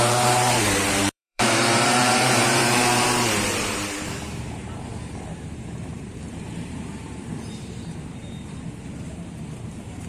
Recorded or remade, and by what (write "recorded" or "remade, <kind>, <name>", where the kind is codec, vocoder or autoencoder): remade, vocoder, BigVGAN v2